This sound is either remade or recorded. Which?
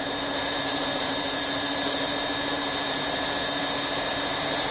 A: remade